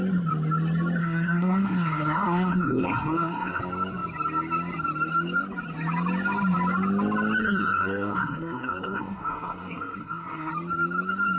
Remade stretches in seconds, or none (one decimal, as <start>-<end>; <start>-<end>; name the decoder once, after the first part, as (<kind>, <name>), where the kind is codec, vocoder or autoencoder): 1.0-3.6 (codec, SNAC); 7.4-10.5